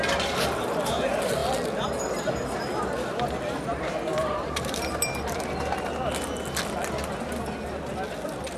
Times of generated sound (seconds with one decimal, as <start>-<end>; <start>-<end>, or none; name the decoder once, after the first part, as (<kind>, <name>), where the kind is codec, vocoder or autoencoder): 4.1-5.4 (vocoder, BigVGAN v2)